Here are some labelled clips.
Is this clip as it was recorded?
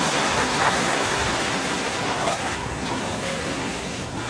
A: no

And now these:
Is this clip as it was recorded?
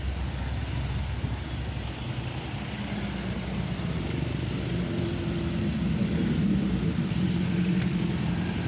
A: yes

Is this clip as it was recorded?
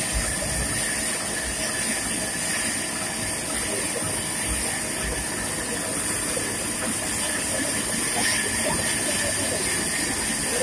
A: yes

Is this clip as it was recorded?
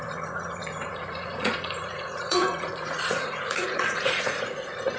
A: no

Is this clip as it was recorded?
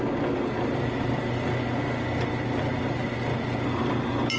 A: yes